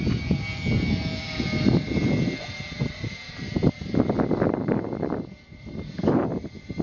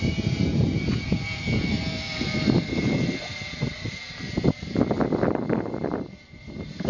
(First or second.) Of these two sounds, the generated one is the second